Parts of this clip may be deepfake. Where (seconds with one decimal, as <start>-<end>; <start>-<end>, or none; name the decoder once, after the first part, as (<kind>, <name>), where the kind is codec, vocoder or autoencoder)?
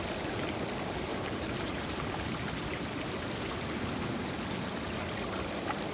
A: 1.1-2.6 (vocoder, BigVGAN v2)